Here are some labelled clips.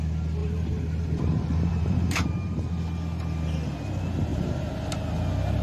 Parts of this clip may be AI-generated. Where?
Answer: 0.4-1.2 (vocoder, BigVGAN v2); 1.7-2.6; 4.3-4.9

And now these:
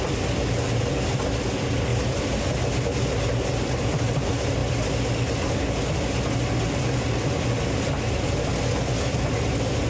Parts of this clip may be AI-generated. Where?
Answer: 0.0-4.6 (vocoder, BigVGAN v2); 8.1-8.5; 9.1-9.9

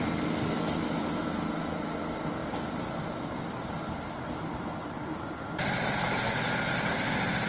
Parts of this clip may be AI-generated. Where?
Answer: 2.4-6.2 (vocoder, BigVGAN v2)

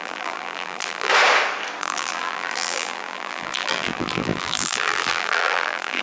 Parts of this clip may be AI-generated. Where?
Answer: 0.0-1.1 (vocoder, BigVGAN v2); 1.8-6.0

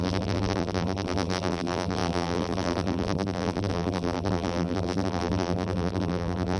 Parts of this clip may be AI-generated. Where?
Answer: 0.0-6.6 (vocoder, BigVGAN v2)

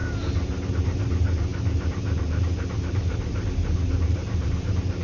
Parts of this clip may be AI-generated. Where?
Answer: 0.0-5.0 (vocoder, BigVGAN v2)